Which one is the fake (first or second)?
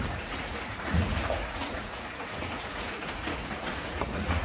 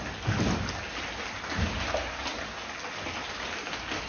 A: first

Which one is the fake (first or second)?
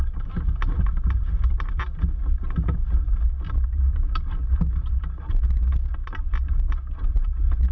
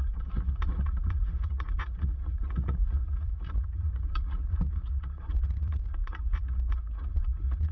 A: second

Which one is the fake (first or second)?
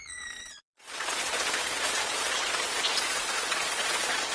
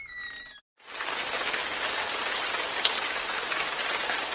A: first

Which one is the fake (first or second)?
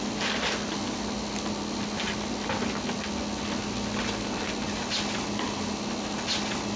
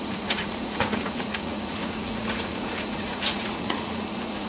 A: second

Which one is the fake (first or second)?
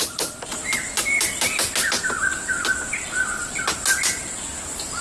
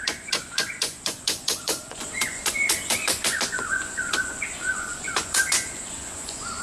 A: second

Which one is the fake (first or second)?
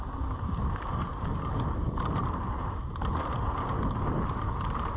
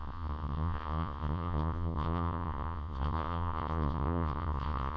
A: second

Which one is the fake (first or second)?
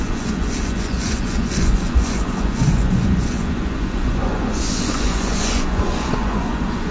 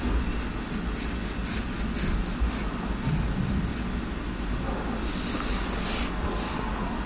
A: first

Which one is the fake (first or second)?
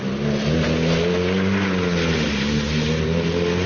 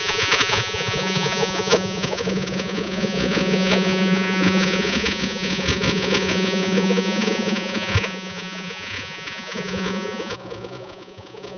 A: second